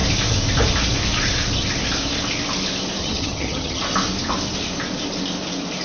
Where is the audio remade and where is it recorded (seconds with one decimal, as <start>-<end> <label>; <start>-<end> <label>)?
0.0-3.0 recorded; 3.0-3.8 remade; 3.8-5.8 recorded